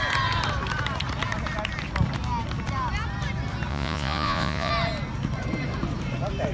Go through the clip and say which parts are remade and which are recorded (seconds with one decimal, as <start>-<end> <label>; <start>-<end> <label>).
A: 0.0-3.7 recorded; 3.7-4.7 remade; 4.7-6.5 recorded